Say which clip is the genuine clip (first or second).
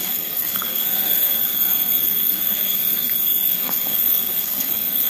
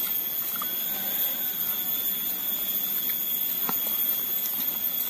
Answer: second